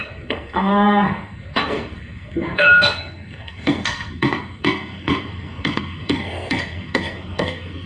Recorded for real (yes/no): no